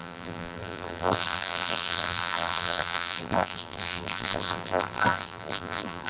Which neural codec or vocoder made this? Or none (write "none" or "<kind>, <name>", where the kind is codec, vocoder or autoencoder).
vocoder, BigVGAN v2